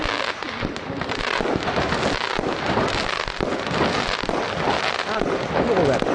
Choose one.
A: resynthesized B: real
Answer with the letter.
B